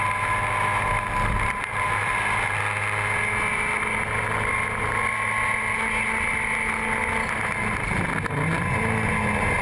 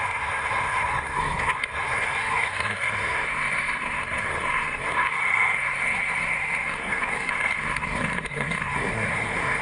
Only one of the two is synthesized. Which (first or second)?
second